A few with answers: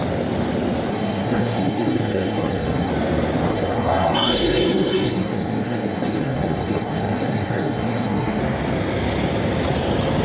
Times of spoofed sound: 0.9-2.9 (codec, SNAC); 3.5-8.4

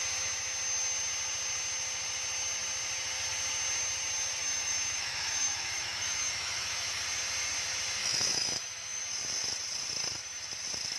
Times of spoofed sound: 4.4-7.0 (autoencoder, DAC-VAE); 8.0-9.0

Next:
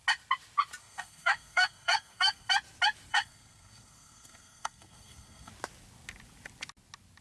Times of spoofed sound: 0.8-2.5 (codec, SNAC); 3.1-5.5